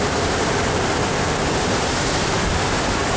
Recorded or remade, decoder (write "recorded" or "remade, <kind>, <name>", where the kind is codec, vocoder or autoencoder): remade, vocoder, BigVGAN v2